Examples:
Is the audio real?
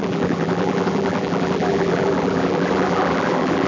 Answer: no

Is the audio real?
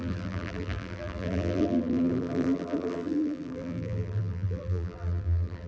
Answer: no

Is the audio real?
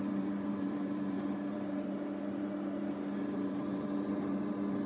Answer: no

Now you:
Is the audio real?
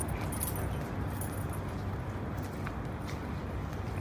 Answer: yes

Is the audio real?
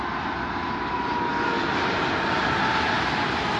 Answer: yes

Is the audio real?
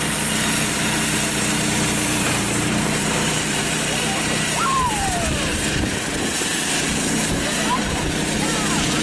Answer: no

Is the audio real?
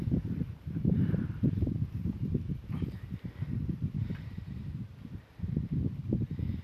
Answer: no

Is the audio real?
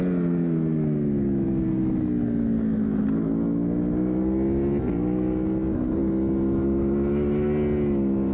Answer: yes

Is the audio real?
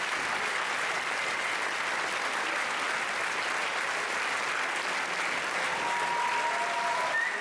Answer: yes